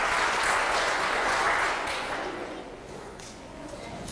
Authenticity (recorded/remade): remade